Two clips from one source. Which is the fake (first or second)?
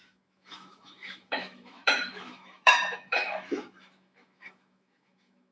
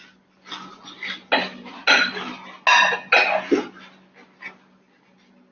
first